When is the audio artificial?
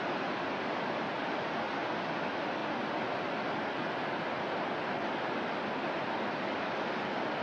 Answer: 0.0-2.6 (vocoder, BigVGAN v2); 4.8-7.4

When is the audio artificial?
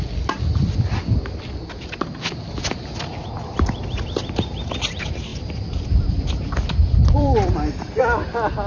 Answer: 5.3-8.0 (vocoder, BigVGAN v2)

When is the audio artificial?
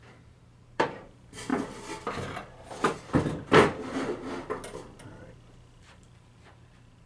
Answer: 0.0-1.5 (vocoder, BigVGAN v2); 5.8-7.1